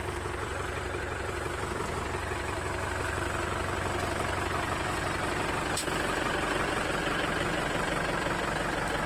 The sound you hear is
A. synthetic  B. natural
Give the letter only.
A